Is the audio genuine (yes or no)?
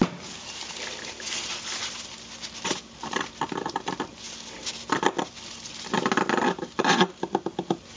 yes